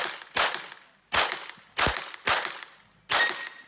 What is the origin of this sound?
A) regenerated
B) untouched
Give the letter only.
B